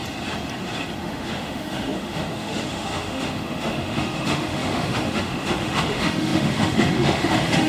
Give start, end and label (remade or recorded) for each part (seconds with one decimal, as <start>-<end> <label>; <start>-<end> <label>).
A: 0.0-1.0 recorded; 1.0-7.7 remade